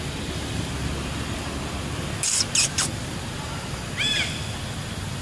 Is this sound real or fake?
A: real